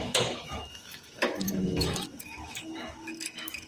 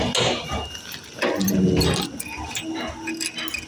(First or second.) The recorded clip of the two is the second